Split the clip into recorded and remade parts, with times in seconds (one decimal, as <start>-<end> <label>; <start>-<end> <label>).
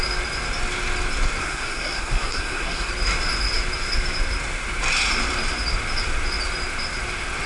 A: 0.0-1.4 recorded; 1.4-2.9 remade; 2.9-7.5 recorded